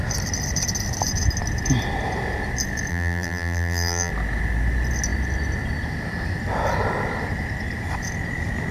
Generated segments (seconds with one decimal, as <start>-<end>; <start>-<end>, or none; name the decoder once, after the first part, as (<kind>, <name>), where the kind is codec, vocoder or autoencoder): 2.9-4.1 (vocoder, BigVGAN v2)